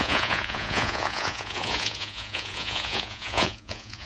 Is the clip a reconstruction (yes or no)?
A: yes